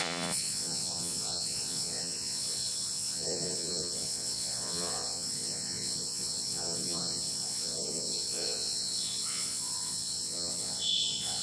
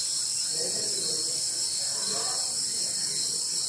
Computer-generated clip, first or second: first